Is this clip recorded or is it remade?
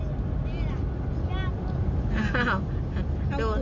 recorded